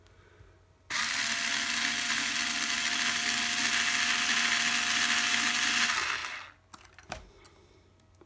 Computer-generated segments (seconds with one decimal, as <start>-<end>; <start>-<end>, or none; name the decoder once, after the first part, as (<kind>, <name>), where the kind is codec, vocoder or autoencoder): none